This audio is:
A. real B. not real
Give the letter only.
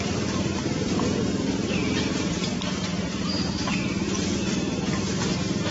B